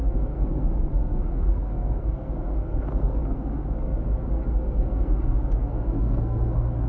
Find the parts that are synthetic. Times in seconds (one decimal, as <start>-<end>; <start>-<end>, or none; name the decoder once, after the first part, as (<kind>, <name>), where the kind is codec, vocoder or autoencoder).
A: 0.0-6.9 (codec, SNAC)